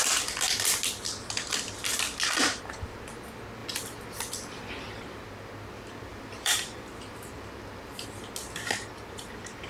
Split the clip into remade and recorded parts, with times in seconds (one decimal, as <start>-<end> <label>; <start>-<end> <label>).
0.0-6.1 recorded; 6.1-8.2 remade; 8.2-9.7 recorded